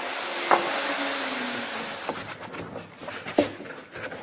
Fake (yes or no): no